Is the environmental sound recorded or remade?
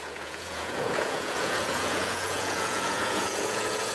remade